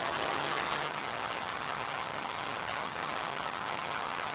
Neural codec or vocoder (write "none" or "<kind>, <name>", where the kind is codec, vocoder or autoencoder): vocoder, HiFi-GAN